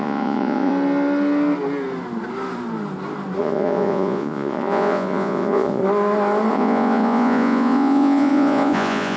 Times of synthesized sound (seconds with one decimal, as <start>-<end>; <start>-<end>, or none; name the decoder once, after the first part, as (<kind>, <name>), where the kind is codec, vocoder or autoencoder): 0.0-0.7 (vocoder, Vocos); 3.4-5.8; 6.5-9.2